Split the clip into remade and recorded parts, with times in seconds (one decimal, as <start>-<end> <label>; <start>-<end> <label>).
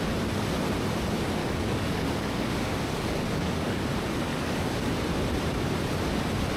0.0-1.4 recorded; 1.4-3.8 remade; 3.8-4.3 recorded; 4.3-4.9 remade; 4.9-6.6 recorded